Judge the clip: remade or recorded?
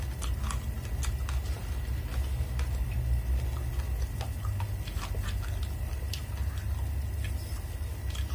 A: recorded